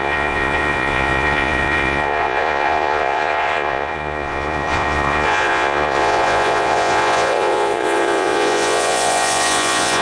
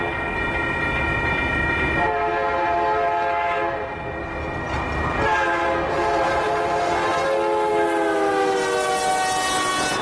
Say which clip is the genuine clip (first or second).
second